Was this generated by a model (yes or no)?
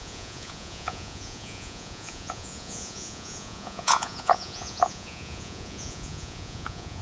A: yes